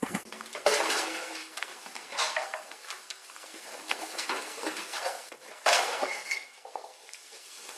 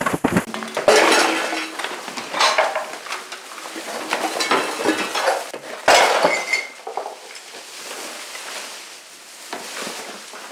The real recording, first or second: second